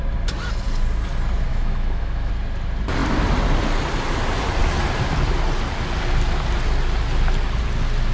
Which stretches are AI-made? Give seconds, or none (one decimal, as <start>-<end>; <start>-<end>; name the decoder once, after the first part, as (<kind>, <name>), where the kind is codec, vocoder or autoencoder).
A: 1.5-2.3 (autoencoder, DAC-VAE)